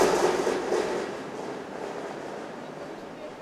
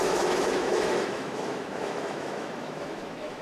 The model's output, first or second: second